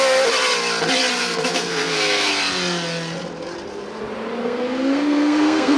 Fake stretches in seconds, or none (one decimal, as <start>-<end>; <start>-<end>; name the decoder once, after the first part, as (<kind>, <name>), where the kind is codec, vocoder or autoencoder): 1.1-2.3 (codec, SNAC); 4.4-5.8

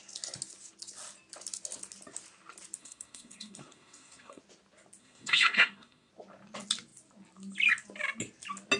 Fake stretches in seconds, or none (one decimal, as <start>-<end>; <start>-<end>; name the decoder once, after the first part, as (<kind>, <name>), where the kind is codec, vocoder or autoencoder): 2.8-4.4 (codec, SNAC); 5.0-6.1

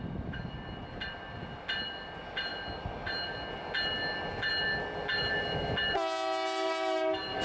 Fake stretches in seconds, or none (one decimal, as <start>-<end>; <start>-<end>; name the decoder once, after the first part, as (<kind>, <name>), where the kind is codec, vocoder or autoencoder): none

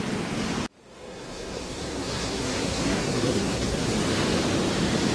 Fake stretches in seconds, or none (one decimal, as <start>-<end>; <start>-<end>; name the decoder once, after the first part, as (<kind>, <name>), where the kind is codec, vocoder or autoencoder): 0.8-3.9 (codec, SNAC)